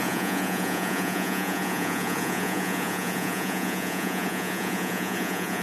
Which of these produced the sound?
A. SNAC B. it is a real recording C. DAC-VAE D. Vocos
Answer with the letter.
D